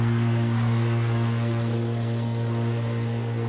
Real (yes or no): no